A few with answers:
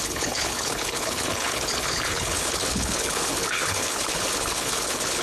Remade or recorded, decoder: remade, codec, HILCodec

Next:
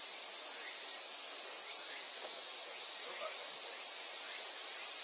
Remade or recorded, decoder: recorded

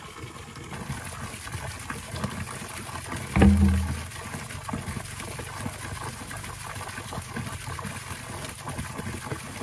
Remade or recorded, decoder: recorded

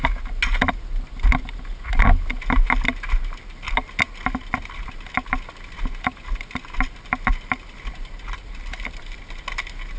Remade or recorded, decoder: recorded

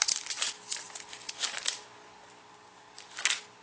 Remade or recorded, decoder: recorded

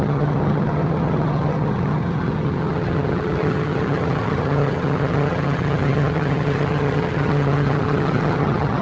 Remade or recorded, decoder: remade, vocoder, HiFi-GAN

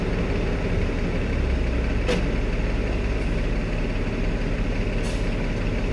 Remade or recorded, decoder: recorded